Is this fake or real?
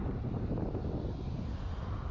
real